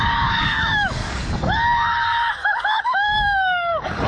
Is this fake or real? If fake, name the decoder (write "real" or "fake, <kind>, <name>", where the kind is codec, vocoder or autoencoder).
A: fake, codec, DAC